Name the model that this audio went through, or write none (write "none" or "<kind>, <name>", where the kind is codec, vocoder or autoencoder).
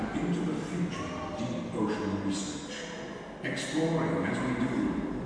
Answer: none